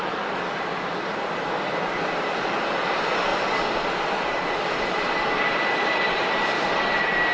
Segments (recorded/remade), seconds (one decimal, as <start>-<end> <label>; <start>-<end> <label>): 0.0-7.3 recorded

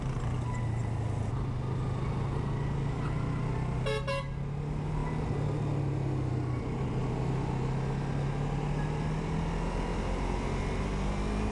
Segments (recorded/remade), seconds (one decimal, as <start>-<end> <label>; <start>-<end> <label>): 0.0-11.5 recorded

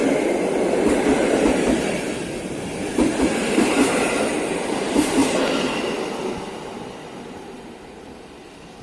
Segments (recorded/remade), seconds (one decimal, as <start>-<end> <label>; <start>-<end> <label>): 0.0-5.2 remade; 5.2-7.3 recorded; 7.3-8.8 remade

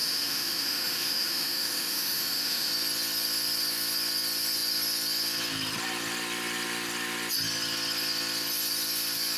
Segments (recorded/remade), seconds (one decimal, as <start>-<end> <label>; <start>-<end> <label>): 0.0-2.7 remade; 2.7-9.4 recorded

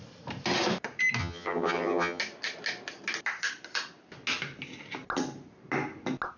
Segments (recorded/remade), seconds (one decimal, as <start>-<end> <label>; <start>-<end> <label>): 0.0-1.2 recorded; 1.2-2.2 remade; 2.2-6.4 recorded